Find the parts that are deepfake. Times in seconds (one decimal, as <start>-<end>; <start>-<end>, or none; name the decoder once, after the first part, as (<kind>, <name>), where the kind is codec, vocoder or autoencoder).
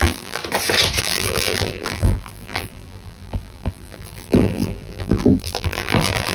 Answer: 0.0-0.4 (vocoder, BigVGAN v2); 1.0-6.3